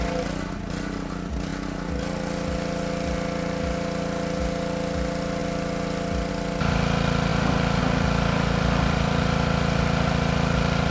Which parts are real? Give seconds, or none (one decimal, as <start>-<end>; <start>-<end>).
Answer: 0.0-10.9